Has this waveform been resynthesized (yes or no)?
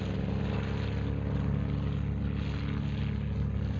no